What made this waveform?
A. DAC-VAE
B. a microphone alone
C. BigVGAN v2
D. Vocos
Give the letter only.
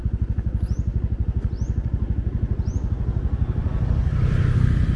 B